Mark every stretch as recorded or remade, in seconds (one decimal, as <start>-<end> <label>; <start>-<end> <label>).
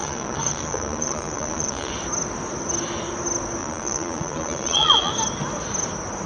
0.0-1.9 remade; 1.9-3.6 recorded; 3.6-5.1 remade; 5.1-6.3 recorded